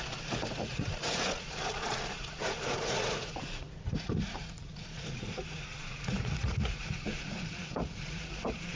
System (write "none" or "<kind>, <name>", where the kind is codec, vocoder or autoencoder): vocoder, Vocos